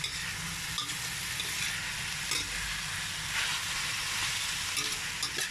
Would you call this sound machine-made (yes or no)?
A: no